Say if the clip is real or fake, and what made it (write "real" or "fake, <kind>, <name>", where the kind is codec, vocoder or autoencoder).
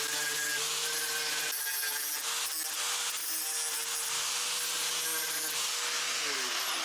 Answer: real